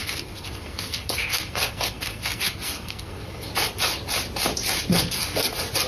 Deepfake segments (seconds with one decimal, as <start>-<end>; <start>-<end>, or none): 0.0-3.5; 4.9-5.5